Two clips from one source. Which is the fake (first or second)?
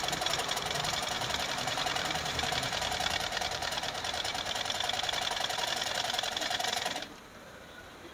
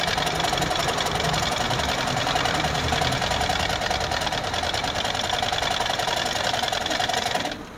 first